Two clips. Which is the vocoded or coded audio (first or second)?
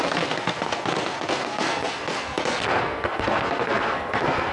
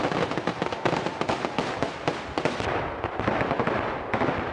first